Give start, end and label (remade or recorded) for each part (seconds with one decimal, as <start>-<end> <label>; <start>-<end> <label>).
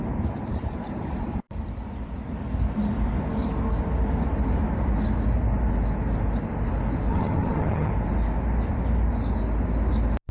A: 0.0-7.1 recorded; 7.1-7.9 remade; 7.9-10.3 recorded